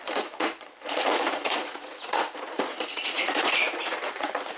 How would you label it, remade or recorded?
remade